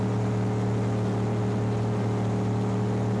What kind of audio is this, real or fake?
real